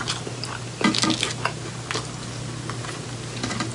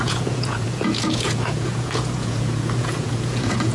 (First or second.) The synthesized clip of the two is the second